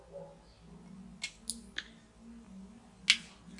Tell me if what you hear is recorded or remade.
recorded